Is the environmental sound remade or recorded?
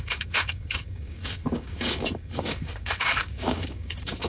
remade